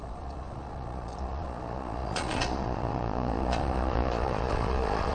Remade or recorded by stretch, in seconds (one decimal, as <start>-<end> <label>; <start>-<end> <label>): 0.0-5.1 remade